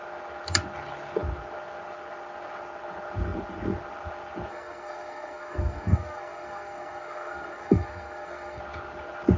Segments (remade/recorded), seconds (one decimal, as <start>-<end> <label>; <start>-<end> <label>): 0.0-4.5 recorded; 4.5-8.6 remade; 8.6-9.4 recorded